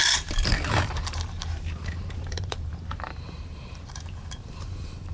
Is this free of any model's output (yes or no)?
no